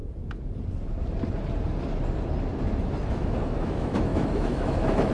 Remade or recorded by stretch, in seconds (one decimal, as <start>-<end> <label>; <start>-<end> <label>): 0.0-3.1 recorded; 3.1-5.1 remade